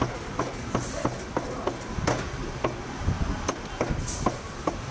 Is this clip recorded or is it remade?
recorded